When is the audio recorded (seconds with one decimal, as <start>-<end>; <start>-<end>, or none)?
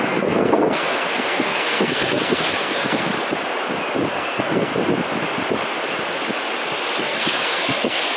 3.1-4.1; 4.7-7.0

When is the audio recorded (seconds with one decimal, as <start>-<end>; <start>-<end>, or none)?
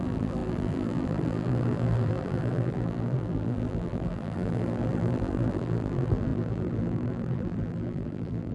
none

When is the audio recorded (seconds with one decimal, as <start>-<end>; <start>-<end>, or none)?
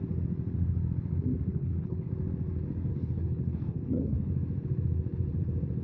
0.0-1.5; 2.1-2.9; 4.3-5.8